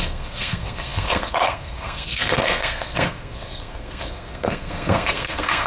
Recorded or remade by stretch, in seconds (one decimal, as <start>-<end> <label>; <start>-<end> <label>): 0.0-5.7 remade